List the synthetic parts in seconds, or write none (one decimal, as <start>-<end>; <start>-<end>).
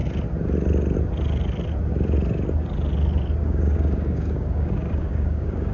3.4-5.7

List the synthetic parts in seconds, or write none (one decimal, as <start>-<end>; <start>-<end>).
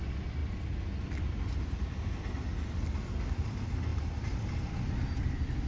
none